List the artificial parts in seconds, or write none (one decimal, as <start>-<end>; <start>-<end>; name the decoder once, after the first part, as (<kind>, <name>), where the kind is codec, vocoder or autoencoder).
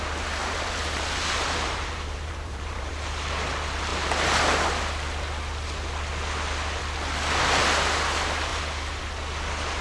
0.4-2.9 (vocoder, BigVGAN v2)